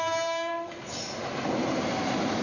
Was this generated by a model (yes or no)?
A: yes